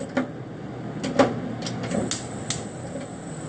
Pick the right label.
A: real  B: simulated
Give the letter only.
A